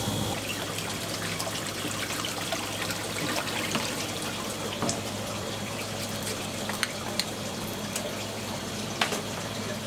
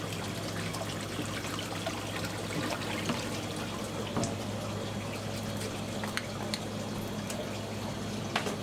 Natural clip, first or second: second